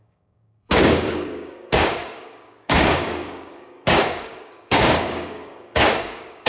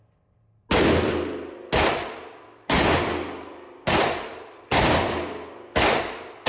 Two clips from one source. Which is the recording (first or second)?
second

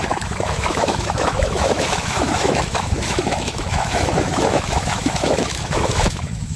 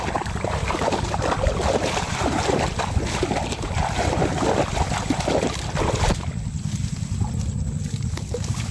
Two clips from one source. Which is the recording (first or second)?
second